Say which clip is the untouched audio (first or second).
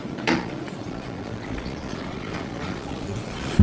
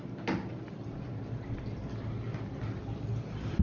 second